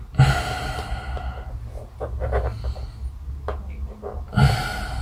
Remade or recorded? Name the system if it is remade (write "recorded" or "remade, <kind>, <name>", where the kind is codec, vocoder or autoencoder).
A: recorded